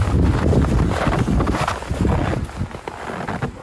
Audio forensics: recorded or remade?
recorded